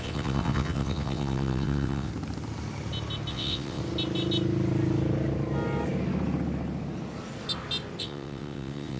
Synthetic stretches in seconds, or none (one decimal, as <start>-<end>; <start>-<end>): 0.0-2.1; 3.3-3.8; 8.0-9.0